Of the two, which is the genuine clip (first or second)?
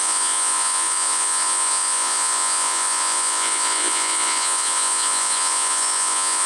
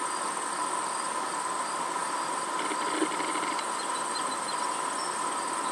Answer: second